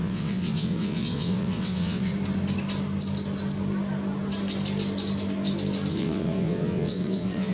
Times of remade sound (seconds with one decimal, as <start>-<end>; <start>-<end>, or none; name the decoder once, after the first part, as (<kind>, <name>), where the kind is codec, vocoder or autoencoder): 0.0-2.1 (vocoder, WaveNeXt); 5.9-7.5